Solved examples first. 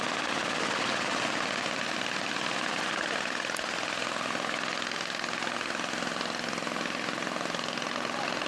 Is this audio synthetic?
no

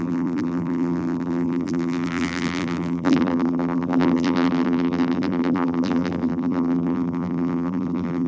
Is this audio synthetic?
yes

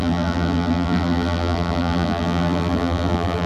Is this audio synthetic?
yes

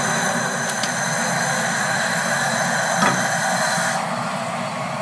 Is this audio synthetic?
no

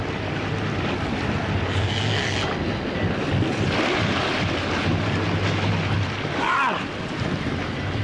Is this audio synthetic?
no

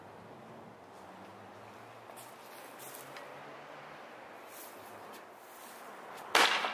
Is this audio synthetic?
no